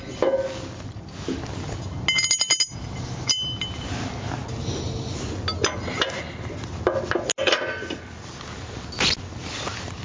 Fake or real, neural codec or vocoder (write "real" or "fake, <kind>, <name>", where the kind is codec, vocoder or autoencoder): real